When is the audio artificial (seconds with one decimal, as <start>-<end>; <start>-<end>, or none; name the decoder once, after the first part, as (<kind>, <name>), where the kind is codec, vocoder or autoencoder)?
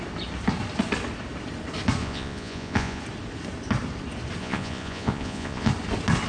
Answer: 2.0-3.0 (vocoder, Vocos); 4.4-5.7